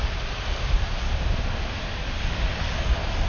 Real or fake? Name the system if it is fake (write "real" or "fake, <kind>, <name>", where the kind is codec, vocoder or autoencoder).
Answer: real